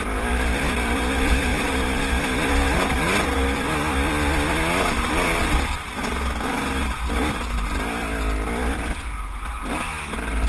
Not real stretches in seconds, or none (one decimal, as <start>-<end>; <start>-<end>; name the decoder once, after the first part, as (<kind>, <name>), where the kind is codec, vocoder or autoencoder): none